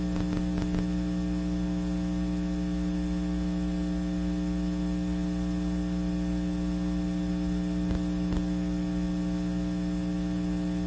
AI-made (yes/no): no